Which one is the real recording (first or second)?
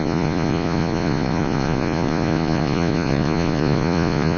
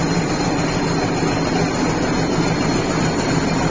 second